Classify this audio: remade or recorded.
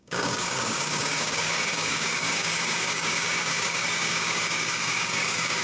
remade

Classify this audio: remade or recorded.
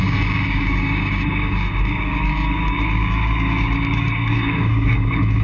remade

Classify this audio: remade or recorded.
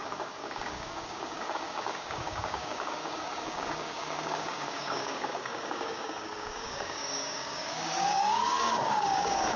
remade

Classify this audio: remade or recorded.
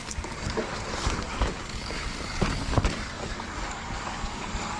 remade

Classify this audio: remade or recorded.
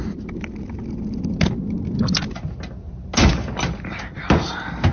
recorded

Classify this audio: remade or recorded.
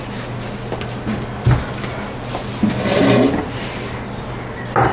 recorded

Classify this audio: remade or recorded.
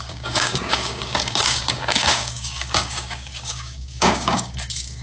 remade